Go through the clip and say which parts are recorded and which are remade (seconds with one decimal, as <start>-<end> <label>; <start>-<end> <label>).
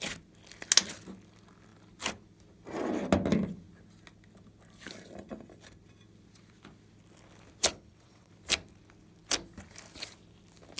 0.0-7.7 recorded; 7.7-8.3 remade; 8.3-10.8 recorded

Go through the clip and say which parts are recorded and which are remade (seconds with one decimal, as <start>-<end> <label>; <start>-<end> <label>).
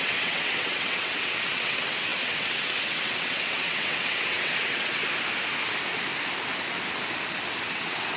0.0-5.0 remade; 5.0-7.6 recorded; 7.6-8.2 remade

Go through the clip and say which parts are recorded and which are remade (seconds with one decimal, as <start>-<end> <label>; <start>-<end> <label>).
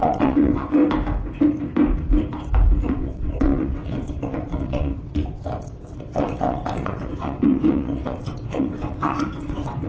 0.0-0.8 remade; 0.8-2.9 recorded; 2.9-9.9 remade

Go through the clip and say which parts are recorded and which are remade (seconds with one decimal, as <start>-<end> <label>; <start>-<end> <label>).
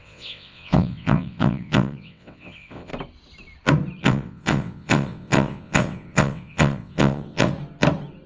0.0-2.9 remade; 2.9-4.0 recorded; 4.0-7.5 remade; 7.5-8.3 recorded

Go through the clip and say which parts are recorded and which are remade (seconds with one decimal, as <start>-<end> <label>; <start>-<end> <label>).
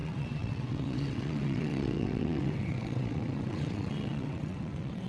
0.0-5.1 remade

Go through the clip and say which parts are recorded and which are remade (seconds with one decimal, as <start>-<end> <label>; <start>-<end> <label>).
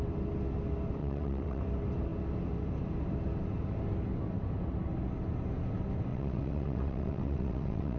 0.0-1.0 recorded; 1.0-1.6 remade; 1.6-6.1 recorded; 6.1-8.0 remade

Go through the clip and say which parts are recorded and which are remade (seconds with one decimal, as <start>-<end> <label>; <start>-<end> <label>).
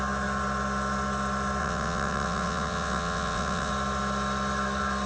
0.0-1.6 recorded; 1.6-3.7 remade; 3.7-5.1 recorded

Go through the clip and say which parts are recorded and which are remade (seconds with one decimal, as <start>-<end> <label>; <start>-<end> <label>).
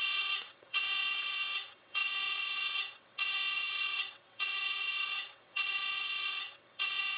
0.0-7.2 remade